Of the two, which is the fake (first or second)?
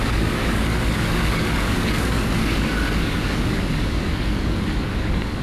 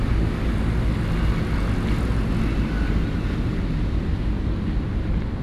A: first